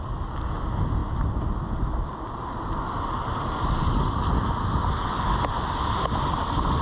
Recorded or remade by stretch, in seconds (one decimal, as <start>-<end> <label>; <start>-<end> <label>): 0.0-6.8 recorded